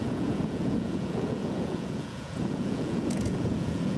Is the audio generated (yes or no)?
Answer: yes